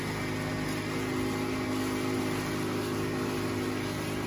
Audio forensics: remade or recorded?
recorded